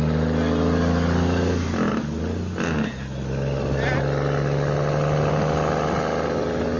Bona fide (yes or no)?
yes